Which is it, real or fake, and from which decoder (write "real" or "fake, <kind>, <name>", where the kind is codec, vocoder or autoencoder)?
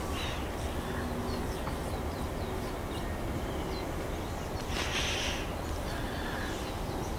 real